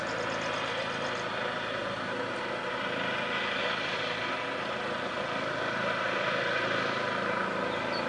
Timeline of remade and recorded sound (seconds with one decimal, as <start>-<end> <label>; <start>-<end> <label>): 0.0-8.1 recorded